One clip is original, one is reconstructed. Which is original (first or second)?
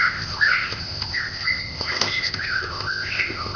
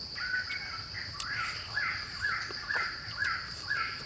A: second